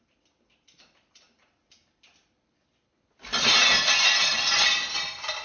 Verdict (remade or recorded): recorded